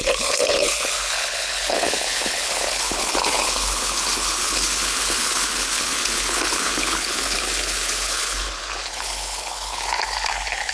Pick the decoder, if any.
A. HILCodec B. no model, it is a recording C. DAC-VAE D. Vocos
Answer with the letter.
A